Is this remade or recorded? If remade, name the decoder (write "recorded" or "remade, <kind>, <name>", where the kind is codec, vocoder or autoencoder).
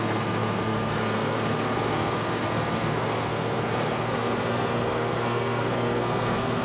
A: remade, codec, SNAC